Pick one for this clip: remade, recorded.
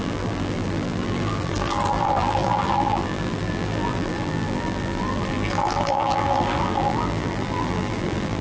remade